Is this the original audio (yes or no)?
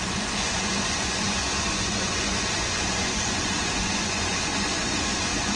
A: no